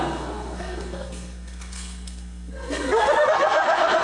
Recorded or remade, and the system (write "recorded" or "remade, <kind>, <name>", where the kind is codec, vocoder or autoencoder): remade, codec, SNAC